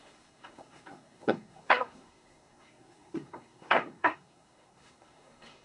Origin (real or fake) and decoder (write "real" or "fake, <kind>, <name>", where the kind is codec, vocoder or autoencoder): fake, codec, SNAC